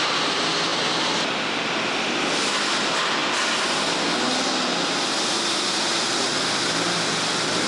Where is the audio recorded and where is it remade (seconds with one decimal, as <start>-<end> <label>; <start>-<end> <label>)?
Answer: 0.0-3.2 remade; 3.2-6.2 recorded; 6.2-7.7 remade